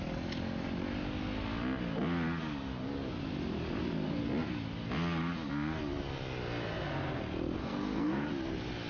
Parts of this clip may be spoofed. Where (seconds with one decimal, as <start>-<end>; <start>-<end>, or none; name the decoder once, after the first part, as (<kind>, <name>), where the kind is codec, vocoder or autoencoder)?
7.6-8.3 (codec, SNAC)